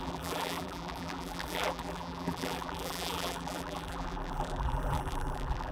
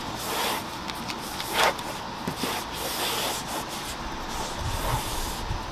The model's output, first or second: first